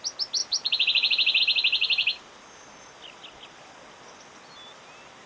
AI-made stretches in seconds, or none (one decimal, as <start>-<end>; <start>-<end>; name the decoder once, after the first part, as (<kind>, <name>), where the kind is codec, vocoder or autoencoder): 0.4-1.4 (vocoder, BigVGAN v2); 1.8-2.4